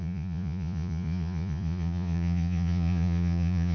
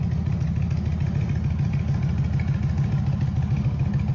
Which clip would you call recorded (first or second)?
second